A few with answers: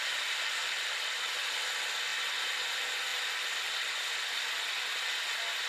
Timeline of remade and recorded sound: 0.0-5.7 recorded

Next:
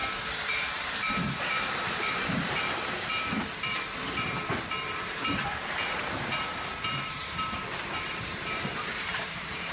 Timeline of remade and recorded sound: 0.0-9.7 remade